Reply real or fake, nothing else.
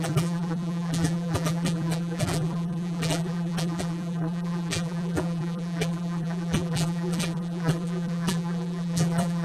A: fake